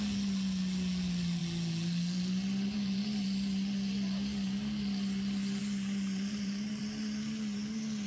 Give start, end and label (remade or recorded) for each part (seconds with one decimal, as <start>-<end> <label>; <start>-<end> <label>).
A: 0.0-8.1 recorded